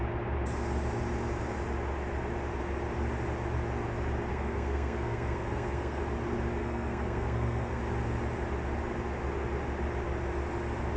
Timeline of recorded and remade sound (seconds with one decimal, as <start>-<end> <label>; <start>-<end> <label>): 0.0-4.3 recorded; 4.3-6.0 remade; 6.0-6.6 recorded; 6.6-7.8 remade; 7.8-11.0 recorded